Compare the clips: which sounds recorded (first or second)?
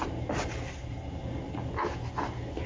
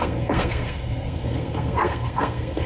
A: first